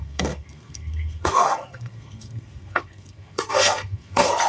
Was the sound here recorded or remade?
remade